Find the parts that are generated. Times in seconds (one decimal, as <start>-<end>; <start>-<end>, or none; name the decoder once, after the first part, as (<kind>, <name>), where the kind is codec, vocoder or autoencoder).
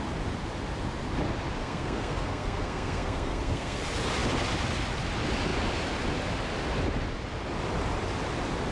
1.6-3.8 (codec, SNAC)